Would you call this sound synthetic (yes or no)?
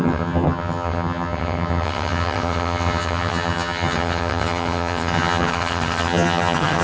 yes